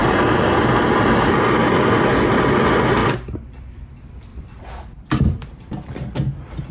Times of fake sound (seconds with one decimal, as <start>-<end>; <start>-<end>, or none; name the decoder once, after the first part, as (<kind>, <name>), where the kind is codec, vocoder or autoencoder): 0.0-0.9 (vocoder, BigVGAN v2); 3.0-3.8; 4.3-5.5